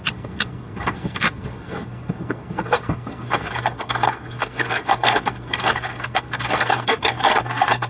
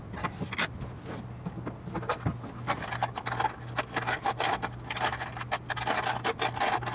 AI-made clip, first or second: first